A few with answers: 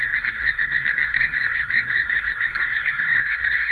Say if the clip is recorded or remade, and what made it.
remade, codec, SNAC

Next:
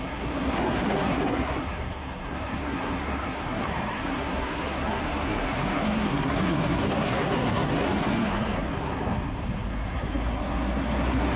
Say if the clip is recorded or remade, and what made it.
remade, codec, SNAC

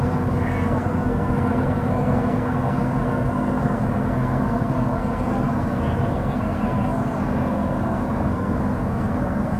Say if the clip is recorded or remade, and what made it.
remade, codec, SNAC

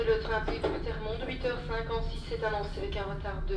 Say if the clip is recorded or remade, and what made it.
recorded